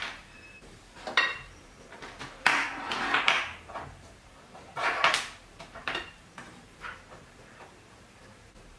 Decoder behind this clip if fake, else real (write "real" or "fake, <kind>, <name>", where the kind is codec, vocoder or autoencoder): fake, vocoder, BigVGAN v2